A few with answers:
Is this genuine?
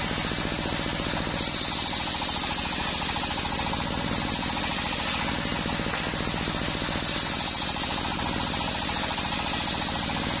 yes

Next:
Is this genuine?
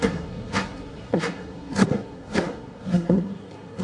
no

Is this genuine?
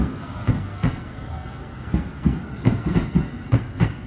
no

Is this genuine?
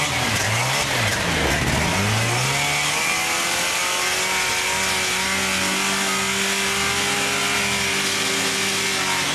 yes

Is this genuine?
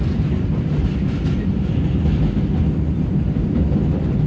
yes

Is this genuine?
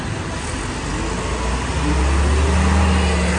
yes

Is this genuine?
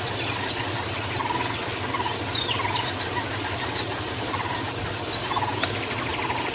yes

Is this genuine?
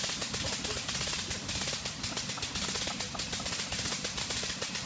yes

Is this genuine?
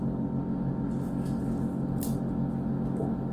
yes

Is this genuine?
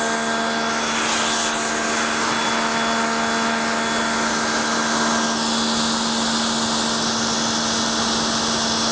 yes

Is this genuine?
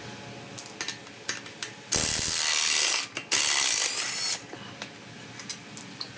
yes